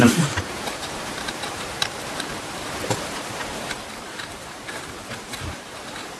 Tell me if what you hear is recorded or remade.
remade